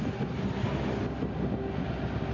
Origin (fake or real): real